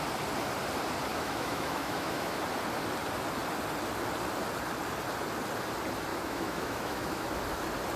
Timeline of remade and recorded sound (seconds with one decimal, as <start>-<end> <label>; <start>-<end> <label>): 0.0-1.1 recorded; 1.1-2.4 remade; 2.4-6.1 recorded; 6.1-7.3 remade; 7.3-8.0 recorded